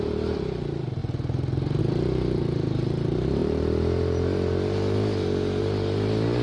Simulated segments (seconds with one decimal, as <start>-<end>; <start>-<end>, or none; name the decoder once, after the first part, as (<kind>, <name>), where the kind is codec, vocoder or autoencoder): none

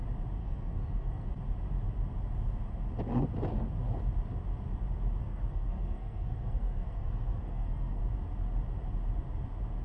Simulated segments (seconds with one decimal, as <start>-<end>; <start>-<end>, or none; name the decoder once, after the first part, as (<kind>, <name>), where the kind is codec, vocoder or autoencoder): 0.4-1.3 (codec, SNAC); 5.2-8.0

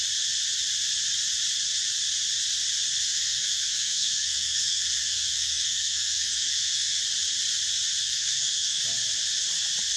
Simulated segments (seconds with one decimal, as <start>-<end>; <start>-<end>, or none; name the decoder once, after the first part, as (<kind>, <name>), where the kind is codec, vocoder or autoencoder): 3.0-7.0 (codec, SNAC); 8.0-8.8

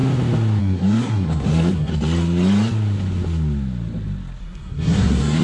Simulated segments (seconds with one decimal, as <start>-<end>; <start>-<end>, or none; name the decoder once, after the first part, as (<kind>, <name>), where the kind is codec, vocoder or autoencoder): 0.6-1.9 (codec, SNAC); 4.4-5.4

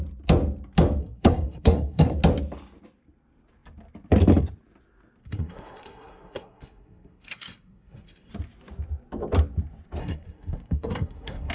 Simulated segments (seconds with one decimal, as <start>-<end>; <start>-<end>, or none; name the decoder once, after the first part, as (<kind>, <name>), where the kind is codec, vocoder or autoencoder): 1.0-2.2 (codec, SNAC); 5.2-8.3; 10.0-11.5

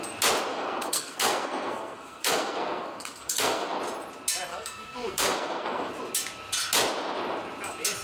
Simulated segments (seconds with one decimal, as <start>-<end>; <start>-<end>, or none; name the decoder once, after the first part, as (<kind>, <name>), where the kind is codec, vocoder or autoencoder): 0.5-3.8 (codec, SNAC); 4.5-5.9